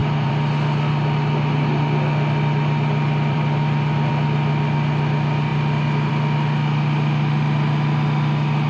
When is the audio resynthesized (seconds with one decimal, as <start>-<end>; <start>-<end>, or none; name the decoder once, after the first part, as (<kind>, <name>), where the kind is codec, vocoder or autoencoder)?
0.0-4.1 (vocoder, BigVGAN v2)